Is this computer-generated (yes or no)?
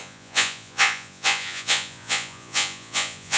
yes